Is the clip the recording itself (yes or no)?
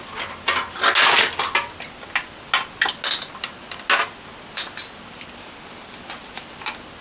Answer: yes